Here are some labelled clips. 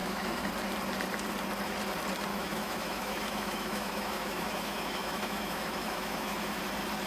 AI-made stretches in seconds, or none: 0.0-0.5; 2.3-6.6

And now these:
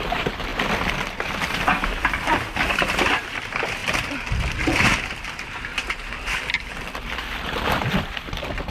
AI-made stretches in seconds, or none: 0.0-0.5; 2.0-8.7

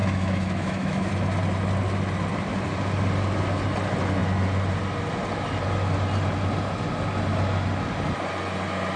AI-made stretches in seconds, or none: 0.0-1.1

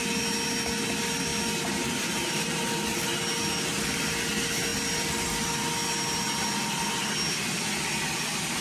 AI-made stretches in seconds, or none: none

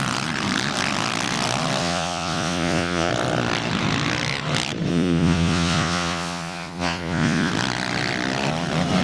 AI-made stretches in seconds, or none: 1.8-3.1; 4.9-7.5

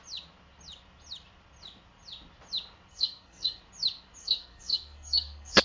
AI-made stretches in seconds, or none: 2.9-3.6; 4.2-5.6

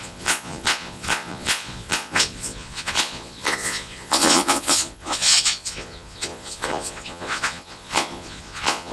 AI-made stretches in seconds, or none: 0.0-8.9

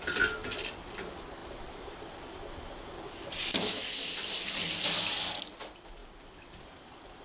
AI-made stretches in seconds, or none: none